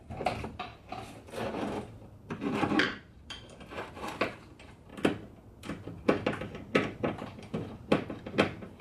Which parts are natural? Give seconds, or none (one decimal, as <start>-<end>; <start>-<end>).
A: 0.7-2.4; 4.9-8.8